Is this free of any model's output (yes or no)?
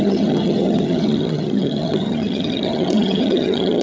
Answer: no